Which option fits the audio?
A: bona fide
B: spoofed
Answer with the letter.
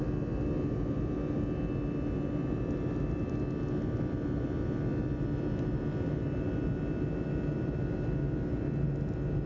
A